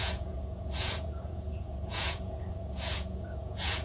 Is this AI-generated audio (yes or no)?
yes